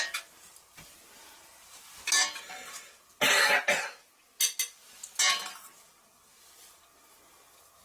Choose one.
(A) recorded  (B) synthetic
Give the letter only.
A